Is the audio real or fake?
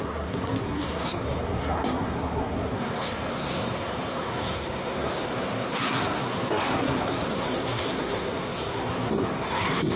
fake